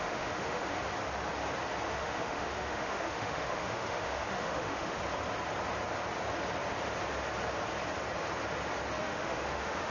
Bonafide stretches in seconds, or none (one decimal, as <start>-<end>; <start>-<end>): 0.8-1.9; 5.0-9.0